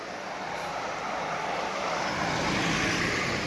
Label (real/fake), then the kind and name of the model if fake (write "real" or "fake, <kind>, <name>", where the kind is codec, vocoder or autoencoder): real